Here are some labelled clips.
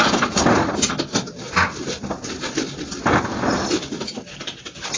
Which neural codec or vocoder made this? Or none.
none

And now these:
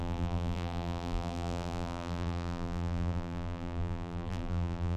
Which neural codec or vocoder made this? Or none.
vocoder, BigVGAN v2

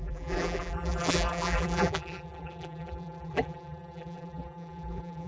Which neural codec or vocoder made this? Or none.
vocoder, BigVGAN v2